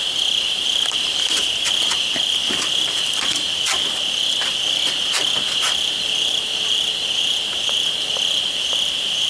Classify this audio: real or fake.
fake